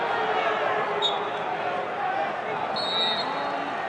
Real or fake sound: real